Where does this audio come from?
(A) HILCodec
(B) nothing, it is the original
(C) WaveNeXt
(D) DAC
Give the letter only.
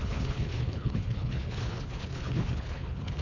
A